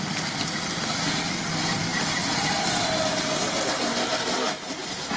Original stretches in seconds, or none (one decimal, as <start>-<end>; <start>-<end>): 0.0-5.2